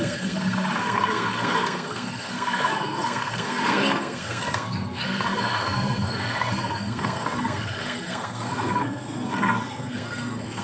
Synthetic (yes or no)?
yes